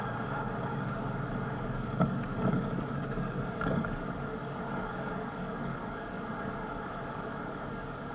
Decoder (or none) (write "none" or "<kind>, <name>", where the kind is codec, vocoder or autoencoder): codec, DAC